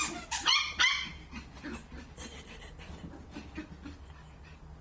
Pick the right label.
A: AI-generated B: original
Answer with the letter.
B